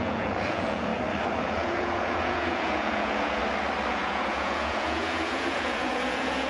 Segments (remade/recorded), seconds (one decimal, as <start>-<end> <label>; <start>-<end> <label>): 0.0-0.9 remade; 0.9-1.4 recorded; 1.4-3.4 remade; 3.4-3.9 recorded; 3.9-6.5 remade